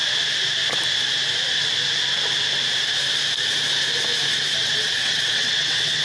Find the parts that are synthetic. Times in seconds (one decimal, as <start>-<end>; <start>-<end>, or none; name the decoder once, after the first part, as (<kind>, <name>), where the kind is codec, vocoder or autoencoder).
4.6-6.0 (vocoder, WaveNeXt)